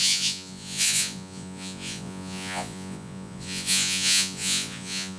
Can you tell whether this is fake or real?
fake